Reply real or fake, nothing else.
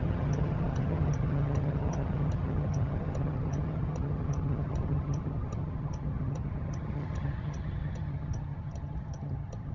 fake